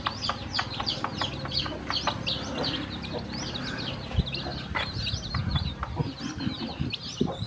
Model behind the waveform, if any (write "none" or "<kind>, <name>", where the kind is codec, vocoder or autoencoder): none